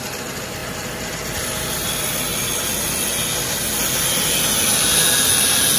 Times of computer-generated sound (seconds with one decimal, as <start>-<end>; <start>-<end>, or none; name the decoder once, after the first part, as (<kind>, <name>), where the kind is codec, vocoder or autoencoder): 0.0-2.3 (vocoder, BigVGAN v2)